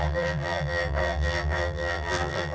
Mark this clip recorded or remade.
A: remade